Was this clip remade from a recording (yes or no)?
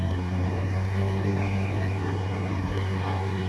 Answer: yes